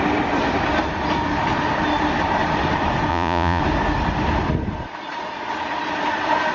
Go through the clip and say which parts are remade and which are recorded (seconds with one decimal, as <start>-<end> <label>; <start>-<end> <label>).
0.0-3.1 recorded; 3.1-3.6 remade; 3.6-6.5 recorded